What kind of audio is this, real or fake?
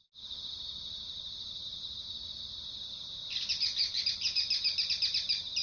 real